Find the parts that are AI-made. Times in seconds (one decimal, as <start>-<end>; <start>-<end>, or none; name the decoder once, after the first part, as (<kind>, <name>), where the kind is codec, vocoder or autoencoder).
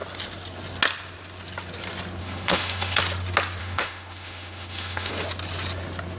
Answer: 2.2-3.0 (autoencoder, DAC-VAE); 3.6-5.1